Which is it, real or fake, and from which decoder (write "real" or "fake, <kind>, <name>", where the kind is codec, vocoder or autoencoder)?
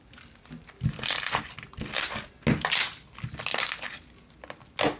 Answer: real